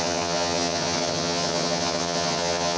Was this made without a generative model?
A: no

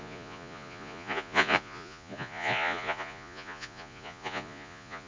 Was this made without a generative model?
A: no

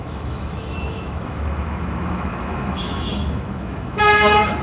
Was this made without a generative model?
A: no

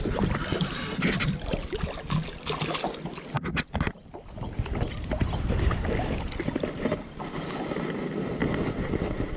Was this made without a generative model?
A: yes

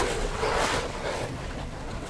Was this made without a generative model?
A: no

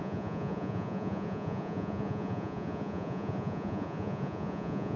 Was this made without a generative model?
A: no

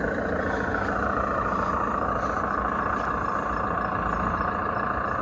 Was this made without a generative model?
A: yes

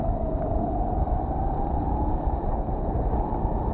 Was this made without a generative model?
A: yes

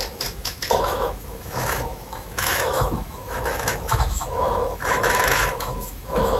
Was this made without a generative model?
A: no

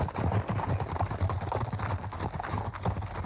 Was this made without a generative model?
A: yes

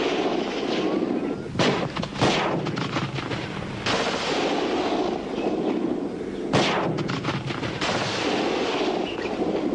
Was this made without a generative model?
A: yes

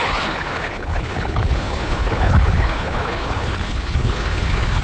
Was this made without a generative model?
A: no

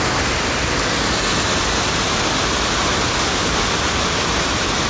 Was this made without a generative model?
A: yes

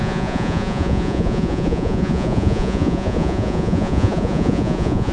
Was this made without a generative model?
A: no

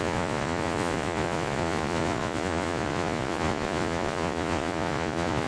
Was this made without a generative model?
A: no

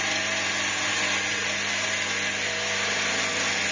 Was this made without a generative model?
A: yes